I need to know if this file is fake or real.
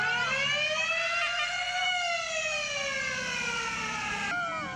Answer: real